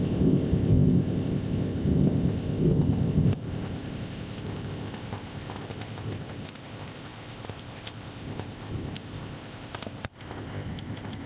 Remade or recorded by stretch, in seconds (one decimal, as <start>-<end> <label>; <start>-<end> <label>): 0.0-11.3 remade